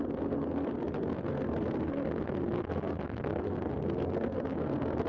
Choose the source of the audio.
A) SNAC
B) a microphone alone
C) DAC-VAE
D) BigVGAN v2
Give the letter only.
A